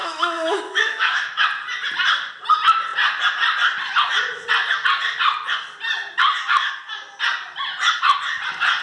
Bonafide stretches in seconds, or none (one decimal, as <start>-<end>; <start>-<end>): 1.4-8.8